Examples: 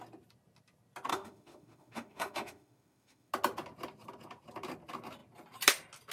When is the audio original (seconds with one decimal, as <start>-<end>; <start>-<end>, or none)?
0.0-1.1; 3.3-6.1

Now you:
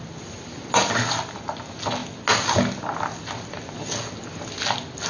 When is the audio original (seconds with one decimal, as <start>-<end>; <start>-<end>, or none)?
0.0-5.1

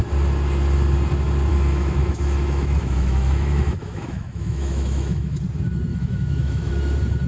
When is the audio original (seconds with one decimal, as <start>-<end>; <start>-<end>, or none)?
0.0-1.5; 5.4-5.9; 6.7-7.3